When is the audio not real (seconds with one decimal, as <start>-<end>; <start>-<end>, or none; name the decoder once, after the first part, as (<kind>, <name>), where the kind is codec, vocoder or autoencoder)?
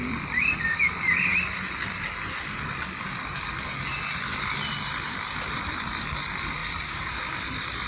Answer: 6.6-7.2 (vocoder, BigVGAN v2)